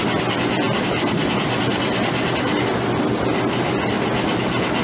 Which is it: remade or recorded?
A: recorded